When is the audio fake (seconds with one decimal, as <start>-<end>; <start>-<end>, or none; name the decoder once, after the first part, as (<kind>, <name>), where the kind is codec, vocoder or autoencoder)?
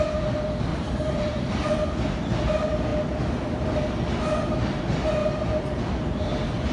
0.7-1.6 (vocoder, BigVGAN v2); 5.2-6.3